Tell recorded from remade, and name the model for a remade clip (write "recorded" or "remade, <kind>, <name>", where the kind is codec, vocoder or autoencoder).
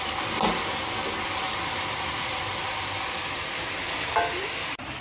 recorded